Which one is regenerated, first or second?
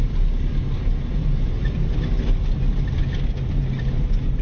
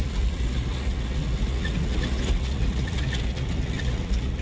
second